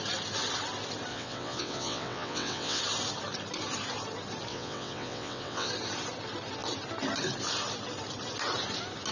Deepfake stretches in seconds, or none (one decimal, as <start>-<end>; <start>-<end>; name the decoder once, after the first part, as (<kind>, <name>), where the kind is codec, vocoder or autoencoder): 1.1-2.8 (vocoder, WaveNeXt); 4.5-5.7